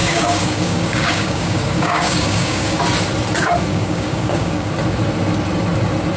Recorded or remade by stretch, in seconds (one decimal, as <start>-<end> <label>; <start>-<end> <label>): 0.0-2.8 remade; 2.8-3.7 recorded; 3.7-4.7 remade; 4.7-6.2 recorded